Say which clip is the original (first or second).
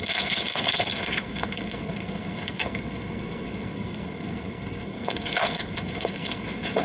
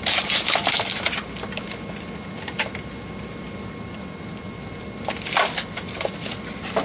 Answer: second